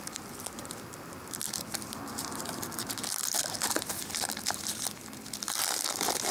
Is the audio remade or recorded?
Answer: remade